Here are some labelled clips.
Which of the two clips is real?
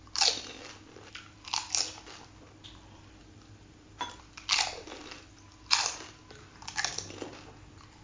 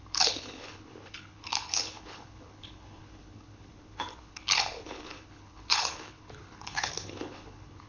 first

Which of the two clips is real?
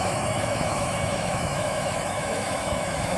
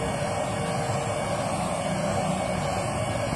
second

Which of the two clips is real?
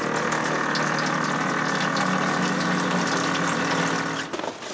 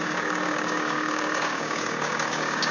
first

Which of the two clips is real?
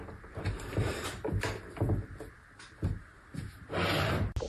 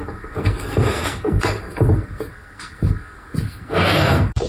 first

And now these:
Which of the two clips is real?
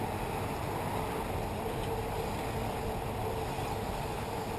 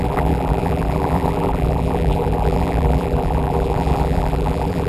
first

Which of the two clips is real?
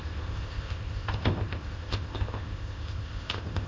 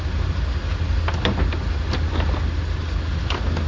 second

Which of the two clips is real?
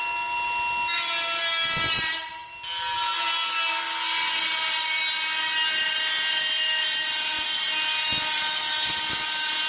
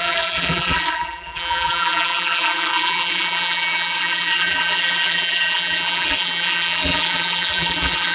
first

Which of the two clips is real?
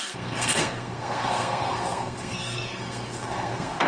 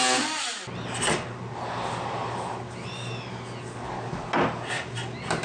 second